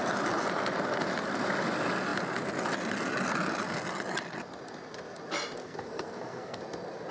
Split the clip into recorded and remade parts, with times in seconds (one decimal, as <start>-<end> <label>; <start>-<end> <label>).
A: 0.0-5.6 recorded; 5.6-6.6 remade; 6.6-7.1 recorded